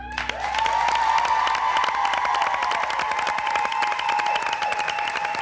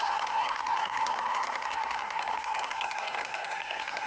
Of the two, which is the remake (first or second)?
second